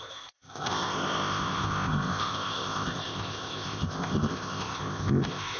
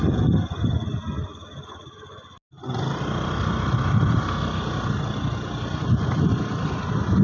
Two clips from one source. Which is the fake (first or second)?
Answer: first